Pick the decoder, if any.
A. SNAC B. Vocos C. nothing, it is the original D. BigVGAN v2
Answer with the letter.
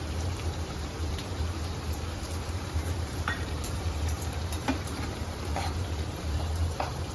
D